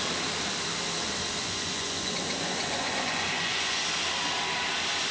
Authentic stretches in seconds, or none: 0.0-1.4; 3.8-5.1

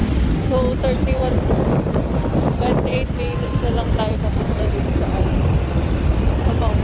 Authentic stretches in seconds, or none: 0.0-6.8

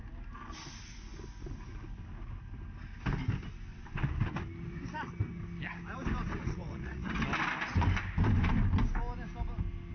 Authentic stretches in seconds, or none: 0.0-3.7; 4.4-6.3; 7.1-9.9

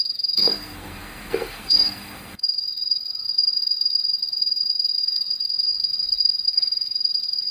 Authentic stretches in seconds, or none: none

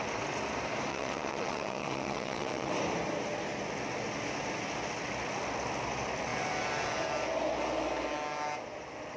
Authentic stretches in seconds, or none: 0.0-0.9; 2.7-9.2

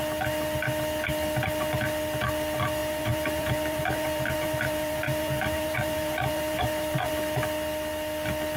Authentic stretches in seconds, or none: 0.0-2.8; 7.1-8.6